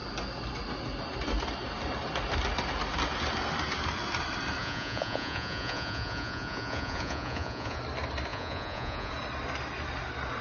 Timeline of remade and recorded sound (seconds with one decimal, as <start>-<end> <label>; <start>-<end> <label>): 0.0-4.6 recorded; 4.6-7.8 remade; 7.8-8.3 recorded; 8.3-9.1 remade; 9.1-10.4 recorded